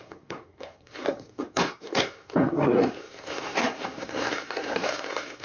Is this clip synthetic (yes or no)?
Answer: yes